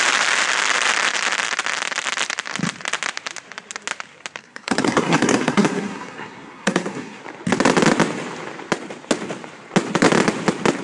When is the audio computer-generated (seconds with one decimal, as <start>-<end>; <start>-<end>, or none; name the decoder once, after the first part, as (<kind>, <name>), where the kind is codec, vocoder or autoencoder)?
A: 4.4-7.2 (codec, SNAC)